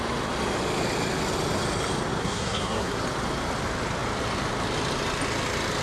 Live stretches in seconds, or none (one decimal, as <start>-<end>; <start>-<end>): 0.0-2.2; 3.0-5.8